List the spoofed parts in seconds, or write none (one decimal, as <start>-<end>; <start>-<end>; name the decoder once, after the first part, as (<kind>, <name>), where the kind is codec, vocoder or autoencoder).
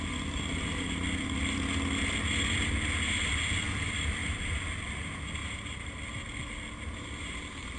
5.4-6.0 (vocoder, BigVGAN v2)